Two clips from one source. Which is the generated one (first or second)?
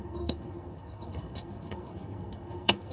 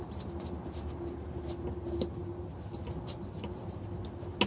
first